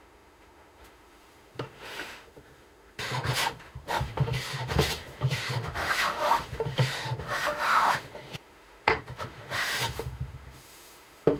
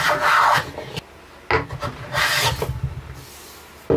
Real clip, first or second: second